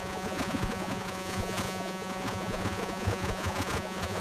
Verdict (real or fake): fake